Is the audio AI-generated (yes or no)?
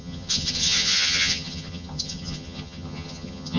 yes